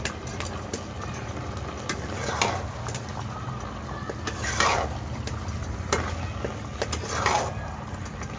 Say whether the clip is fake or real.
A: real